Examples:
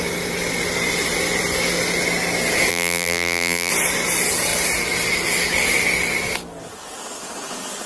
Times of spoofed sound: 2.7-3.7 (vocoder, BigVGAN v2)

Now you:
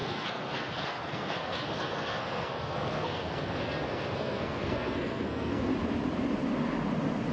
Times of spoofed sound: 0.0-5.7 (codec, SNAC)

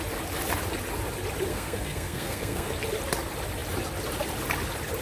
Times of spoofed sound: 1.5-2.7 (codec, SNAC)

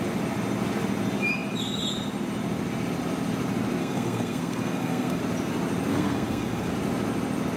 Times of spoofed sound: 3.8-5.2 (codec, SNAC); 5.9-6.7

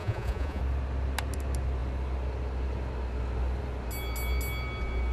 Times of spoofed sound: 0.0-0.6 (vocoder, Vocos)

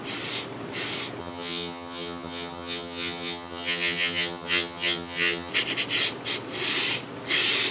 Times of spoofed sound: 1.2-5.5 (vocoder, HiFi-GAN)

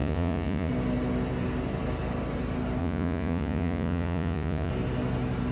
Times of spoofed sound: 0.0-0.7 (vocoder, Vocos); 2.8-4.7

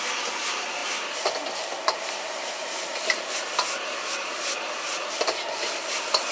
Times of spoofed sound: none